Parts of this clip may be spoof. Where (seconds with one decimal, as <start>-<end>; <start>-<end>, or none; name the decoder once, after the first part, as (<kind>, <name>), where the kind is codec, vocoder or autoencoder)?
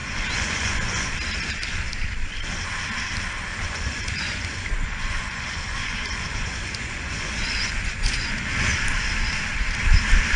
0.0-1.1 (vocoder, Vocos); 3.5-8.7